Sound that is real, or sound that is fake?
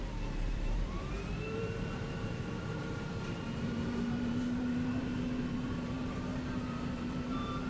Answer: fake